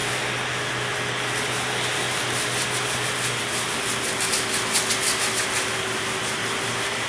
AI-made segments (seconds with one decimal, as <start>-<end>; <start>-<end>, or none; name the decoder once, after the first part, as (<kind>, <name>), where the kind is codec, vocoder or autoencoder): none